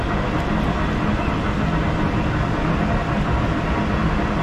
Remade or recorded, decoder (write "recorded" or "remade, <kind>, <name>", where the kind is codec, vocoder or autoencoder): recorded